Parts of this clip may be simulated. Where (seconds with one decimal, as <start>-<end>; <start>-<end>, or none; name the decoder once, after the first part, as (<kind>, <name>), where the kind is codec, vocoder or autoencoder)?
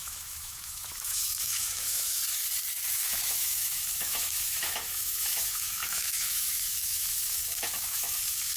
0.0-2.2 (autoencoder, DAC-VAE); 2.9-8.6